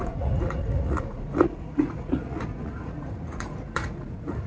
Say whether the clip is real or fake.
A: fake